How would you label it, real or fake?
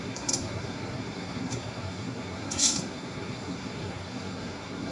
fake